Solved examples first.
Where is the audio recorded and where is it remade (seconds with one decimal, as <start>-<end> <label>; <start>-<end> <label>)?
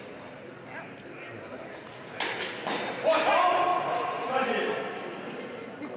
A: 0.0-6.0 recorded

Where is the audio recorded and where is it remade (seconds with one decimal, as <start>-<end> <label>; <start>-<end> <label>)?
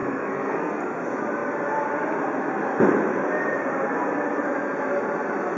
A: 0.0-0.8 remade; 0.8-5.6 recorded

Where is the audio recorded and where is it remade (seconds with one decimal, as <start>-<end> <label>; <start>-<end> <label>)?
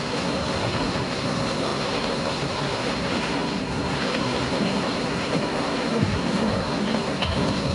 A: 0.0-7.7 remade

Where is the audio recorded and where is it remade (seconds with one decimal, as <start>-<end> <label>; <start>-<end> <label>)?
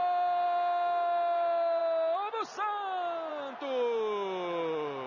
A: 0.0-5.1 recorded